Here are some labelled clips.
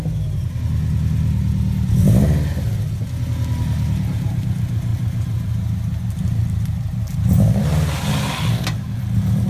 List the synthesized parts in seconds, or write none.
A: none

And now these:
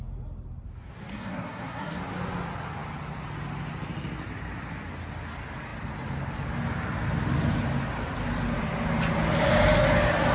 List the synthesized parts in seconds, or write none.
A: 1.1-2.0 (codec, SNAC)

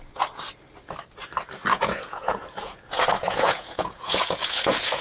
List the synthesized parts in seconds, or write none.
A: 1.7-5.0 (vocoder, Vocos)

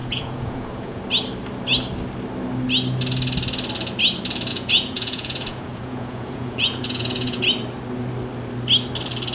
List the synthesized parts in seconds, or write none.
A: 0.0-1.0 (vocoder, Vocos); 4.5-7.4

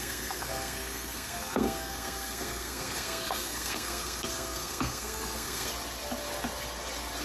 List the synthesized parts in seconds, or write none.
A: 0.0-5.7 (codec, SNAC)